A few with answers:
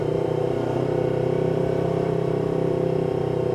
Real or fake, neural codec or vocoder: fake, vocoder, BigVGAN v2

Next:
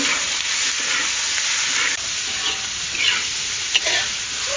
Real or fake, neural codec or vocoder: real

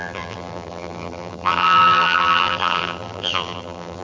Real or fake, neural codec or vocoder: fake, vocoder, BigVGAN v2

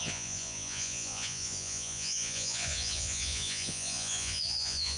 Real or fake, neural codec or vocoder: fake, vocoder, Vocos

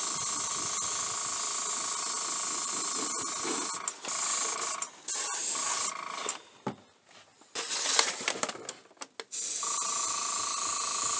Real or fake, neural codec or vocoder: real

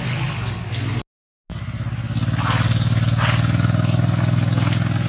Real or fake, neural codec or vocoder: real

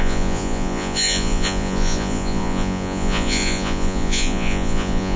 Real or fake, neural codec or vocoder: fake, vocoder, Vocos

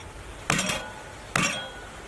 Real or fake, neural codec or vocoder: real